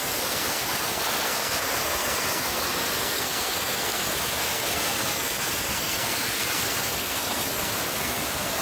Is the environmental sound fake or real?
fake